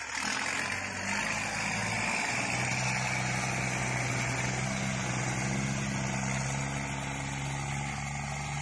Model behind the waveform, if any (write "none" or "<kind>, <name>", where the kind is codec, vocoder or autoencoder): none